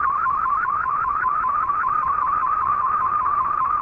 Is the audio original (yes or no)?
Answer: no